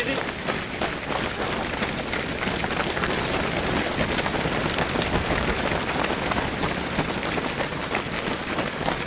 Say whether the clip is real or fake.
real